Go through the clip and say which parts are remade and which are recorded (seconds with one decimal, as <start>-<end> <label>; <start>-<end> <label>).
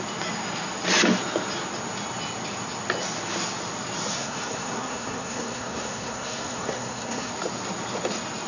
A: 0.0-4.1 recorded; 4.1-7.3 remade; 7.3-8.5 recorded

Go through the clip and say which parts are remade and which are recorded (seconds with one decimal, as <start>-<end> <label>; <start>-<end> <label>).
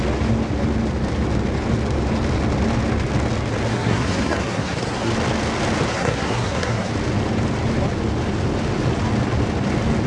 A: 0.0-3.7 recorded; 3.7-5.1 remade; 5.1-5.9 recorded; 5.9-6.9 remade; 6.9-10.1 recorded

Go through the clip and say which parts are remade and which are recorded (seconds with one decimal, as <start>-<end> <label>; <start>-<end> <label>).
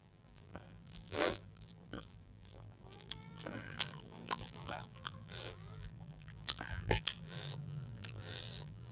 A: 0.0-8.9 remade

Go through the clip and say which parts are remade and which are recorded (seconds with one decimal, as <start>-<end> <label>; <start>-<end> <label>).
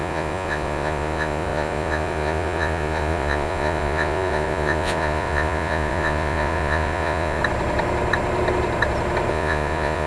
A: 0.0-7.4 remade; 7.4-9.3 recorded; 9.3-10.1 remade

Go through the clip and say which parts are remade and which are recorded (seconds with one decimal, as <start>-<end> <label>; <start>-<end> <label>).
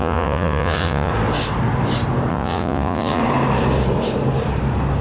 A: 0.0-1.1 remade; 1.1-2.3 recorded; 2.3-3.2 remade; 3.2-5.0 recorded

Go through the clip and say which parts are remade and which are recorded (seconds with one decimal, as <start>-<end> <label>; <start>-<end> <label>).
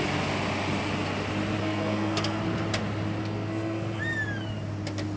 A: 0.0-1.6 recorded; 1.6-2.4 remade; 2.4-3.2 recorded; 3.2-4.0 remade; 4.0-5.2 recorded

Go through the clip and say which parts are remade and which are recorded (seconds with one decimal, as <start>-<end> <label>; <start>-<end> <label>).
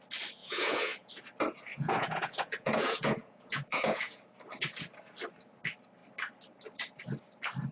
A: 0.0-0.4 recorded; 0.4-1.1 remade; 1.1-1.7 recorded; 1.7-4.2 remade; 4.2-7.7 recorded